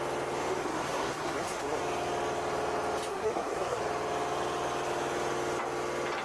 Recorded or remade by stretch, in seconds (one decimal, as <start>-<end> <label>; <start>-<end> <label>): 0.0-0.6 recorded; 0.6-1.8 remade; 1.8-3.1 recorded; 3.1-3.8 remade; 3.8-6.2 recorded